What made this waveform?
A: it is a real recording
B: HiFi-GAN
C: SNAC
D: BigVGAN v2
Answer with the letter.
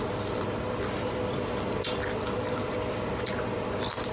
A